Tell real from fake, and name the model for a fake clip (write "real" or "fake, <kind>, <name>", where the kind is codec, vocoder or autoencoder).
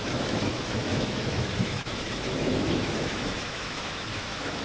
fake, autoencoder, DAC-VAE